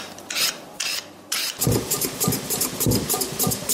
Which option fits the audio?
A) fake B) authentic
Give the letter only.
A